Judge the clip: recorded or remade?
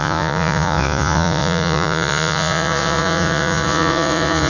remade